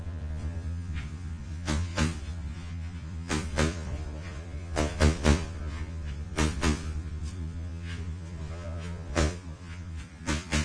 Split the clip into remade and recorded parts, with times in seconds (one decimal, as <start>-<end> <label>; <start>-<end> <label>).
0.0-10.6 remade